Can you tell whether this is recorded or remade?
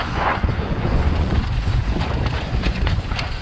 remade